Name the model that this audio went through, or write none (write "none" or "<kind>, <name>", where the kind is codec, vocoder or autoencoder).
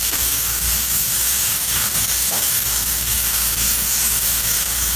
codec, DAC